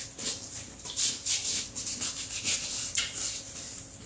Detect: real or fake real